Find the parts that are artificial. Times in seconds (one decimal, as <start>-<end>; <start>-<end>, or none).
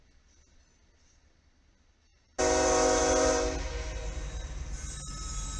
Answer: none